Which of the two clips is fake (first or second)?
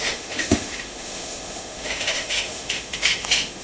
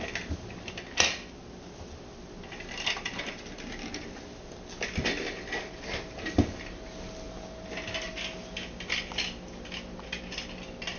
first